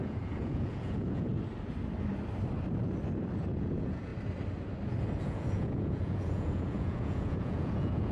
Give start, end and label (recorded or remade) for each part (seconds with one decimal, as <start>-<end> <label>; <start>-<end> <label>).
0.0-1.3 remade; 1.3-3.6 recorded; 3.6-4.1 remade; 4.1-5.2 recorded; 5.2-8.1 remade